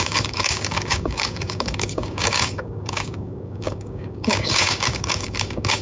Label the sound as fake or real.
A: fake